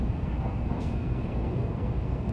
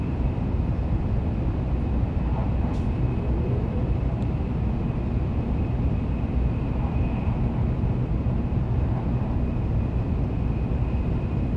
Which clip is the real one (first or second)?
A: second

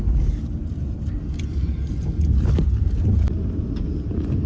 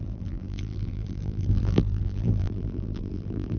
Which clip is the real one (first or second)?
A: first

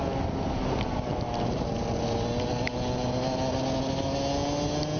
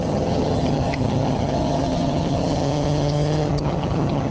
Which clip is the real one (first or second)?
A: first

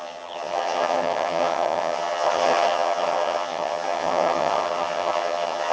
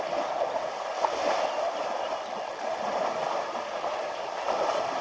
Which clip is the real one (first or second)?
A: second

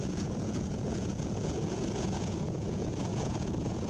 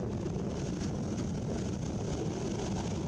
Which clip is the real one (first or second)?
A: second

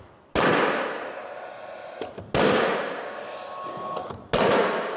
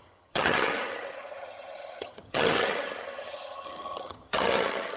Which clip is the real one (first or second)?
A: first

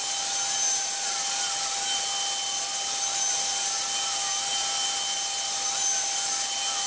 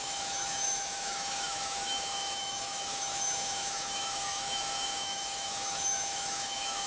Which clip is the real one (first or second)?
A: first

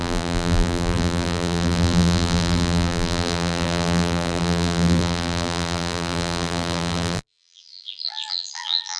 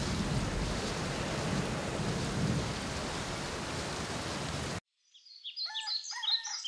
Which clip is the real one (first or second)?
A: second